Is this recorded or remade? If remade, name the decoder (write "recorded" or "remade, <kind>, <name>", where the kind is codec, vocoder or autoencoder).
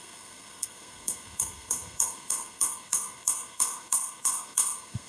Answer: remade, codec, SNAC